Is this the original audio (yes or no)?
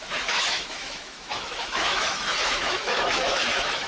no